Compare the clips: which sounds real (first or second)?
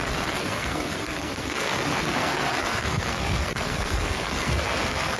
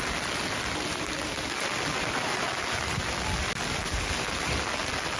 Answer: second